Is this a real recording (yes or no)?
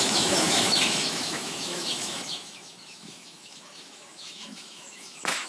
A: no